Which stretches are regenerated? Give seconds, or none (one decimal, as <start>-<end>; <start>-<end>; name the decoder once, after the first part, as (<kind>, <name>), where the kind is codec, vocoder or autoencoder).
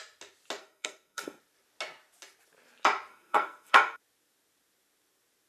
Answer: 0.6-1.4 (codec, SNAC); 3.1-4.0